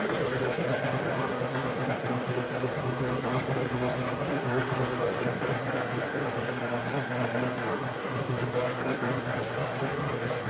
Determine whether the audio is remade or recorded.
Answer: remade